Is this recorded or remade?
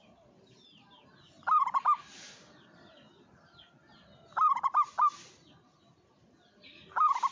recorded